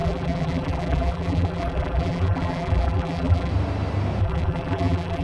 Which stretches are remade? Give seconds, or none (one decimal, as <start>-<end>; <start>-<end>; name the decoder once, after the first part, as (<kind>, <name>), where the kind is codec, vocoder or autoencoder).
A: 0.0-3.5 (vocoder, BigVGAN v2); 4.2-5.2